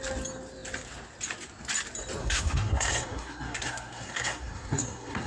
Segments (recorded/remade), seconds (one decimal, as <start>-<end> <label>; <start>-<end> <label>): 0.0-2.2 recorded; 2.2-5.3 remade

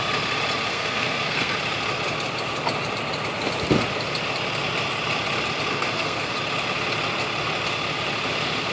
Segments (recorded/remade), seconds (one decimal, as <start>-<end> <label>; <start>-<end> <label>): 0.0-0.7 recorded; 0.7-1.5 remade; 1.5-5.7 recorded; 5.7-6.3 remade; 6.3-8.7 recorded

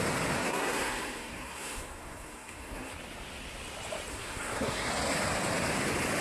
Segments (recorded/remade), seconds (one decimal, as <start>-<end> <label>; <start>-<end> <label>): 0.0-0.4 recorded; 0.4-2.9 remade; 2.9-4.1 recorded; 4.1-4.9 remade; 4.9-6.2 recorded

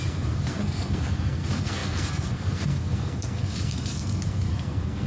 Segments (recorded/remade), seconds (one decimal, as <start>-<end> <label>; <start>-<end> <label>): 0.0-5.1 remade

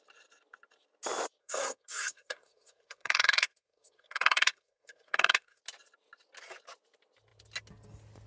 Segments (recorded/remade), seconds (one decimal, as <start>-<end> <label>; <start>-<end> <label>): 0.0-1.4 recorded; 1.4-5.6 remade; 5.6-8.3 recorded

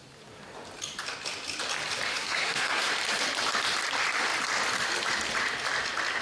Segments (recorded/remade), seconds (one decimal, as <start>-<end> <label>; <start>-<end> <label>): 0.0-2.1 recorded; 2.1-2.9 remade; 2.9-6.2 recorded

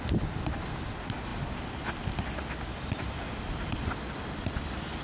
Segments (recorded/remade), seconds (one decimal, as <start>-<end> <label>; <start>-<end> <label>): 0.0-5.0 recorded

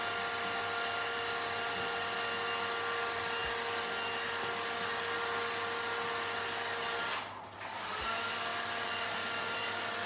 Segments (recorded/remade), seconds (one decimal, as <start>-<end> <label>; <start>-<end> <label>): 0.0-10.1 recorded